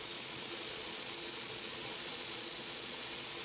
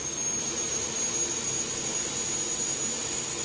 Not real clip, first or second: first